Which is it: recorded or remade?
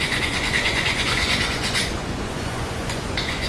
remade